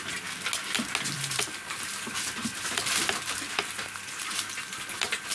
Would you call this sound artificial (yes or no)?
no